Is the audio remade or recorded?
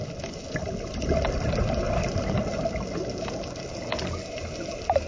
recorded